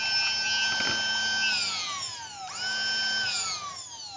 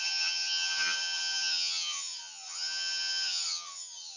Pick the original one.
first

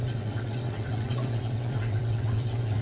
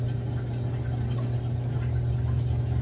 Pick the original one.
second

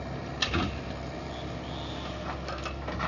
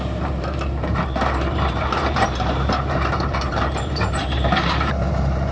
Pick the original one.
first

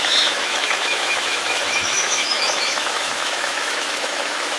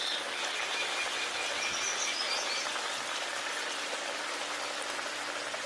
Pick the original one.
second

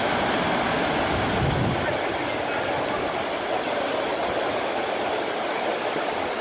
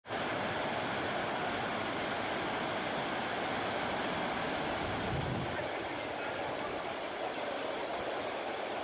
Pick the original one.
first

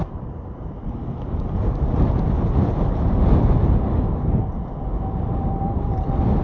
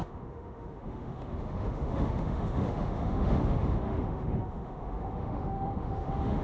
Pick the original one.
first